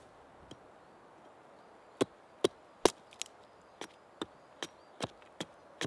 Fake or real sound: real